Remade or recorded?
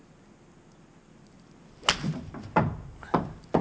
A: recorded